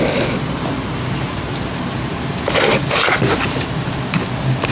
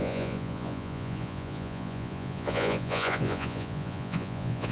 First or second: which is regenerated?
second